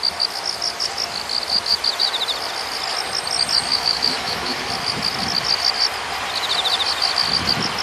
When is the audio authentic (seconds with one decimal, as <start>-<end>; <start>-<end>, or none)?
0.0-3.7; 4.6-7.8